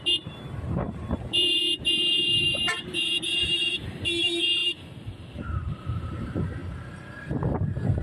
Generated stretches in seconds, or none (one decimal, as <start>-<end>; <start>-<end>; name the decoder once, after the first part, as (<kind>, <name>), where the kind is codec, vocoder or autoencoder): 0.0-6.6 (vocoder, BigVGAN v2); 7.2-8.0